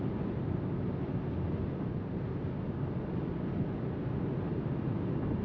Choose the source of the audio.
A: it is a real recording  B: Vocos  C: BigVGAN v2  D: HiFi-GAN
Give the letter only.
A